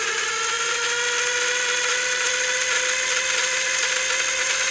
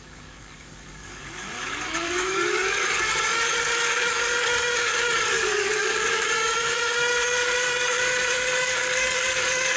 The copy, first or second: second